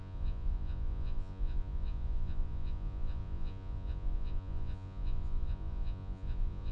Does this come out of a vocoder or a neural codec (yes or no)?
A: yes